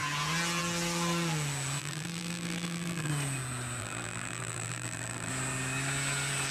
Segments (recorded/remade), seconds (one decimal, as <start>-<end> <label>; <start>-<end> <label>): 0.0-1.8 recorded; 1.8-3.1 remade; 3.1-3.8 recorded; 3.8-5.3 remade; 5.3-6.5 recorded